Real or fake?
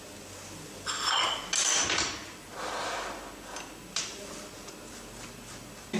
real